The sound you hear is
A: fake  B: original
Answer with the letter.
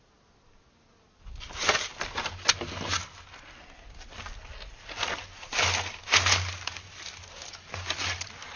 B